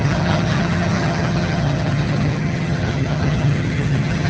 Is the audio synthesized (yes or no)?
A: yes